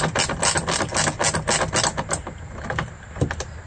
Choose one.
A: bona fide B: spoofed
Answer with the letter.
A